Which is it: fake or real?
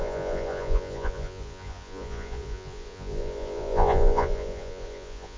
fake